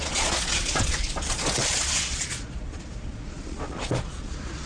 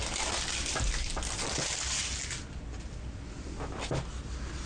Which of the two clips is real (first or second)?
second